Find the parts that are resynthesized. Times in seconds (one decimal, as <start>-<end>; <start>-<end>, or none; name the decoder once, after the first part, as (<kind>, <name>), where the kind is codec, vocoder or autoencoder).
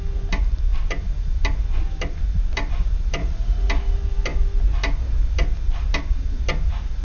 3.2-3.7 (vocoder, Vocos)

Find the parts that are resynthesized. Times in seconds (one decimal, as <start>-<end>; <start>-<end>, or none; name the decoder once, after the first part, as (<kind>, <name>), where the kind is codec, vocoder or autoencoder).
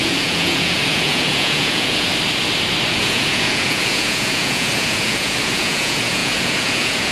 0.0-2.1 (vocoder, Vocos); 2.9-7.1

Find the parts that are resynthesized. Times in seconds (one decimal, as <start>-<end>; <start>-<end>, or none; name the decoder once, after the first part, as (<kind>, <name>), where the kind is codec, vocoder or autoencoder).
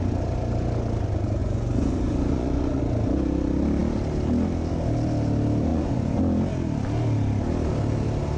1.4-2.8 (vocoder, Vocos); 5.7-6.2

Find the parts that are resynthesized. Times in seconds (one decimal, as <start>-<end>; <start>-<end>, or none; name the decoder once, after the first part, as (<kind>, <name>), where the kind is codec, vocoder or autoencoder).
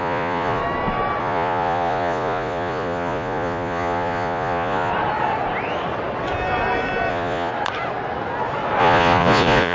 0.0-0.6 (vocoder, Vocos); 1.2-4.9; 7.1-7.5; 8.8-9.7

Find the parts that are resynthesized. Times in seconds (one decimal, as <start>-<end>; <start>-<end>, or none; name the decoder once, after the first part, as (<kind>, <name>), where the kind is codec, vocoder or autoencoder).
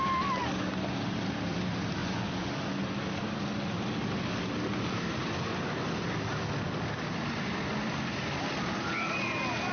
2.0-2.5 (vocoder, Vocos)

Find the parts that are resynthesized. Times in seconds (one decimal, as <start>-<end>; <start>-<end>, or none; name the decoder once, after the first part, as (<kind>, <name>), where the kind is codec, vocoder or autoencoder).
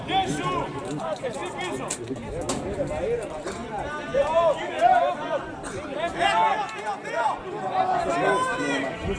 none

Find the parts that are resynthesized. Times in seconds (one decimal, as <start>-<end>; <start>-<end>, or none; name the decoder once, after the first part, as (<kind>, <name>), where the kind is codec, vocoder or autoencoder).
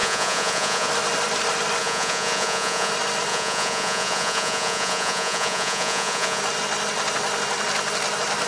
0.0-0.9 (vocoder, Vocos); 1.8-2.9; 3.3-6.4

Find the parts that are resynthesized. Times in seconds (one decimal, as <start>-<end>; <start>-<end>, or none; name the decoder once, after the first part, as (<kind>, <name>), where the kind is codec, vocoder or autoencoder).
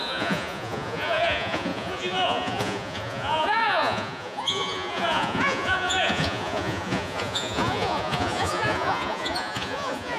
0.0-10.2 (vocoder, Vocos)